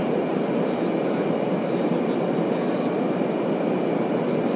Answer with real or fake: real